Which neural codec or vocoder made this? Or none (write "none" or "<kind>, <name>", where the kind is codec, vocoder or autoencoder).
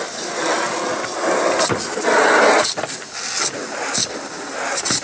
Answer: none